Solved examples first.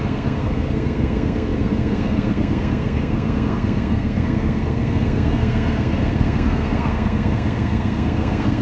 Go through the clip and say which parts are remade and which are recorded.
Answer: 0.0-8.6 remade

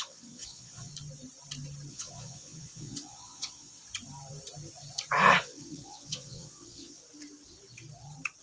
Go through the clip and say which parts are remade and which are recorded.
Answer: 0.0-0.9 remade; 0.9-1.9 recorded; 1.9-3.8 remade; 3.8-5.4 recorded; 5.4-7.0 remade; 7.0-8.4 recorded

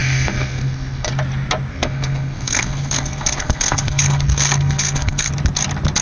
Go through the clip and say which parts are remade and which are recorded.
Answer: 0.0-1.1 remade; 1.1-1.7 recorded; 1.7-5.3 remade; 5.3-6.0 recorded

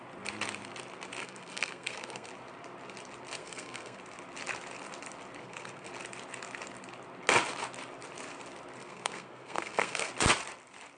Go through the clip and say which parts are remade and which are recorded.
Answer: 0.0-1.2 recorded; 1.2-2.3 remade; 2.3-3.4 recorded; 3.4-4.0 remade; 4.0-5.4 recorded; 5.4-5.9 remade; 5.9-8.8 recorded; 8.8-10.1 remade; 10.1-11.0 recorded